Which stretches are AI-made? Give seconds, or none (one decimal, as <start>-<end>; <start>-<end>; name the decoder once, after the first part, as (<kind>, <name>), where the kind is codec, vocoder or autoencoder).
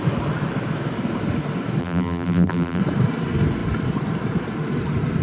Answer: 1.8-2.8 (vocoder, BigVGAN v2)